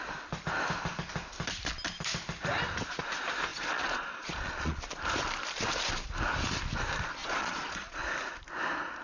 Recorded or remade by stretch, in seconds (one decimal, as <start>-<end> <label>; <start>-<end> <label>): 0.0-3.5 recorded; 3.5-4.8 remade; 4.8-7.2 recorded; 7.2-8.0 remade; 8.0-9.0 recorded